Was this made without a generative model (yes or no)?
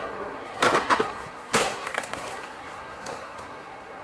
no